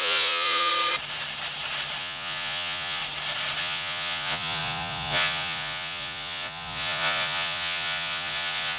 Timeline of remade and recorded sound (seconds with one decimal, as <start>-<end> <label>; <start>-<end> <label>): 0.0-0.7 remade; 0.7-2.0 recorded; 2.0-3.0 remade; 3.0-3.6 recorded; 3.6-8.8 remade